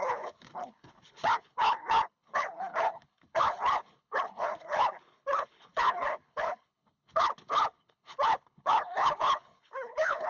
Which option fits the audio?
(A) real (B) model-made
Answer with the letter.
B